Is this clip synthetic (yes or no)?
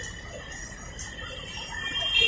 no